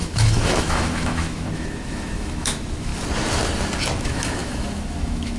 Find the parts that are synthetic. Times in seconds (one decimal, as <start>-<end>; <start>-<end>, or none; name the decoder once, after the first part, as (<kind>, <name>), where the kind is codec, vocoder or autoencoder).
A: 0.0-2.9 (autoencoder, DAC-VAE); 4.0-5.4

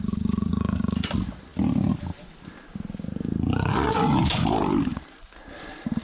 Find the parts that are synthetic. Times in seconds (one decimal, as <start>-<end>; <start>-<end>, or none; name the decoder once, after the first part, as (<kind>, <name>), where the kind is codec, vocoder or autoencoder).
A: none

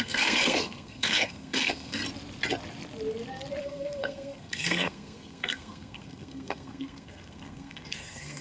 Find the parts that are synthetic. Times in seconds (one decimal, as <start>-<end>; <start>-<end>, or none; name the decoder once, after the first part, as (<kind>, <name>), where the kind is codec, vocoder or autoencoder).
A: 0.0-2.0 (codec, SNAC); 3.6-8.4

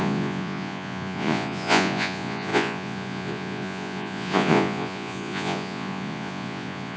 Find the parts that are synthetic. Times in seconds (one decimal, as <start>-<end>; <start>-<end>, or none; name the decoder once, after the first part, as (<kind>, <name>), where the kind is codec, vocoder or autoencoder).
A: 0.0-7.0 (vocoder, Vocos)

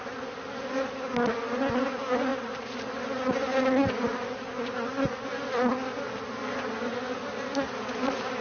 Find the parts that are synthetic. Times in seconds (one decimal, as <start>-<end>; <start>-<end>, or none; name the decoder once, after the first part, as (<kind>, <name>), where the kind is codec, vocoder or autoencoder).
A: none

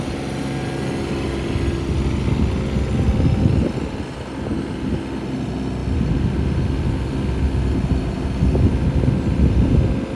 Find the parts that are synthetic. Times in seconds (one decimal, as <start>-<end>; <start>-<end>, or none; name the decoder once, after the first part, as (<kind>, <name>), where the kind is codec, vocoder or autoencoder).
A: none

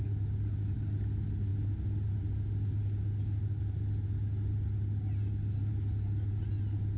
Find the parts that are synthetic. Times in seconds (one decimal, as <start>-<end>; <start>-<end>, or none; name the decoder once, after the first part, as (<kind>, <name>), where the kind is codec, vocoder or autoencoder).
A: none

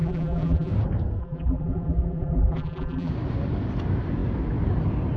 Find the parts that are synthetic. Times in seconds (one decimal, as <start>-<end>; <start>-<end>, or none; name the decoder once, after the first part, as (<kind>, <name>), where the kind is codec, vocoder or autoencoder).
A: 0.0-0.7 (vocoder, BigVGAN v2); 1.2-3.1